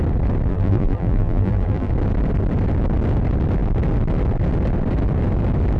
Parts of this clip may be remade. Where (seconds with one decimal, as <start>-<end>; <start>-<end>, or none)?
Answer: 0.5-1.9